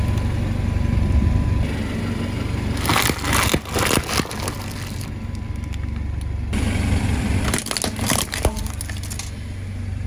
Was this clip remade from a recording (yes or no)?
no